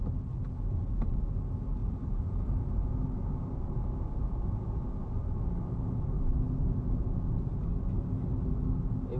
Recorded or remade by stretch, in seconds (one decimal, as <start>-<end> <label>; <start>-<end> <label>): 0.0-1.8 recorded; 1.8-2.9 remade; 2.9-9.2 recorded